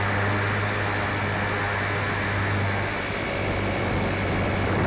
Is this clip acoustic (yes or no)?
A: yes